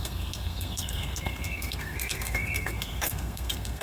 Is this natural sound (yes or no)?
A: no